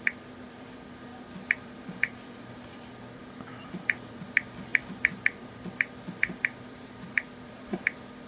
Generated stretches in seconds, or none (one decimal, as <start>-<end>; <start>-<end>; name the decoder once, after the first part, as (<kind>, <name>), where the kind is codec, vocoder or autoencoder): 0.0-1.1 (vocoder, BigVGAN v2); 1.6-8.3